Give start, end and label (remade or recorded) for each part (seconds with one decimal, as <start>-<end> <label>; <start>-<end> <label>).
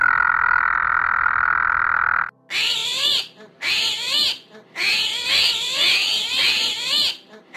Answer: 0.0-2.8 recorded; 2.8-3.7 remade; 3.7-7.6 recorded